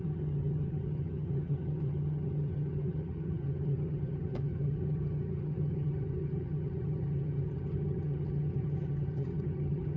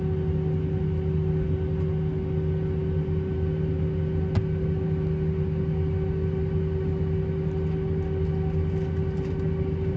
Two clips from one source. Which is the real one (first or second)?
second